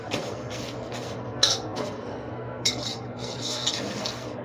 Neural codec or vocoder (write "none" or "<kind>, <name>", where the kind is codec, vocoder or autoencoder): codec, SNAC